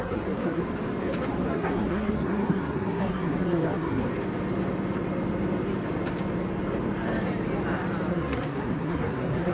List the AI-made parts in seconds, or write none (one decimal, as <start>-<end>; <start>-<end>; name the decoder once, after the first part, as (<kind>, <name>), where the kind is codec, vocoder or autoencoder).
0.0-0.6 (codec, SNAC); 1.5-4.1; 8.1-9.5